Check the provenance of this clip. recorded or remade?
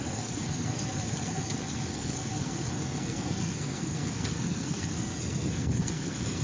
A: remade